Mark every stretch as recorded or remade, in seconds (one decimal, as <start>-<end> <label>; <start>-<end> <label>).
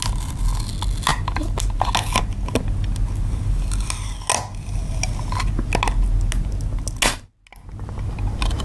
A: 0.0-8.6 recorded